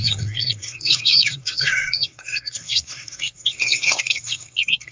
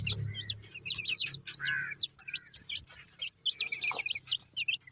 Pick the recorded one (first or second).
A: second